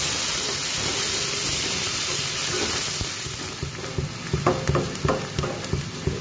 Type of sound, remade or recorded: recorded